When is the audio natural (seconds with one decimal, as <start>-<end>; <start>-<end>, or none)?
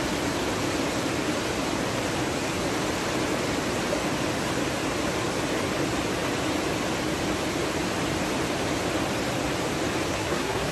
0.0-10.1